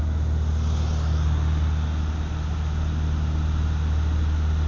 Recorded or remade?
recorded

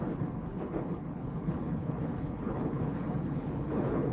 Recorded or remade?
remade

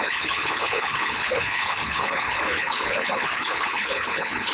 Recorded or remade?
remade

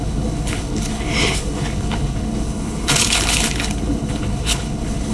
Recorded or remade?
remade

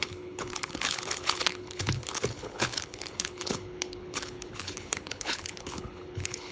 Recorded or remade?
remade